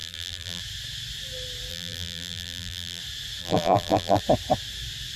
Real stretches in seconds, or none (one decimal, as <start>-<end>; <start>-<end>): 0.6-1.7; 3.0-3.4; 4.2-5.2